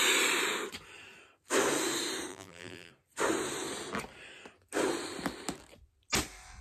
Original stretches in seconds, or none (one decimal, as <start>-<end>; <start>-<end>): 0.0-2.3; 2.9-6.6